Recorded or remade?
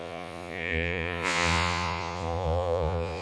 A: remade